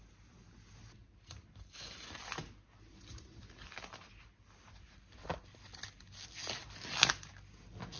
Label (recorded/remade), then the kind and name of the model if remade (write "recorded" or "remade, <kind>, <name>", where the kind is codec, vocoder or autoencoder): recorded